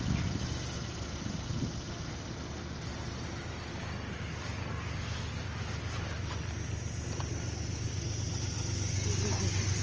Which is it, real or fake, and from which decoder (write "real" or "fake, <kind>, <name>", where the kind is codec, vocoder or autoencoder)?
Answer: real